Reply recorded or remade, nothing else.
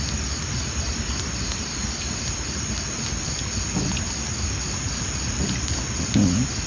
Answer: recorded